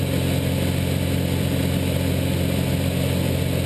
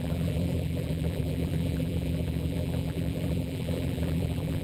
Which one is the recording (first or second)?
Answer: first